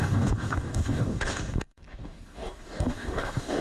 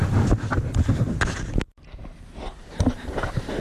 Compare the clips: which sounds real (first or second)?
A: second